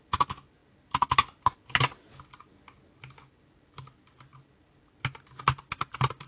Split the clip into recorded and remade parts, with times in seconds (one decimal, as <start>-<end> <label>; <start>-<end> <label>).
0.0-6.3 recorded